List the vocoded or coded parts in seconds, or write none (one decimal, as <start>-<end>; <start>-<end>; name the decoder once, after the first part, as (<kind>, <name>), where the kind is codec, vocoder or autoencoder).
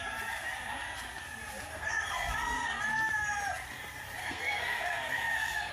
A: 1.7-2.8 (codec, SNAC); 4.2-5.7